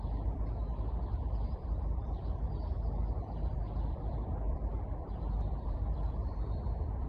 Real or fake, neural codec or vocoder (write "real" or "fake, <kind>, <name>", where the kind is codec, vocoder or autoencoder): fake, vocoder, BigVGAN v2